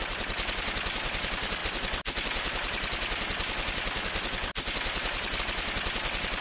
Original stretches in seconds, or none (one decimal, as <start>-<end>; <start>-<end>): 0.0-6.4